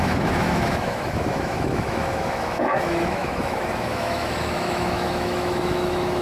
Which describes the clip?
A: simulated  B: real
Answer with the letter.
A